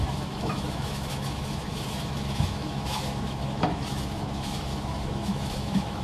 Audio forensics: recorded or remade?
remade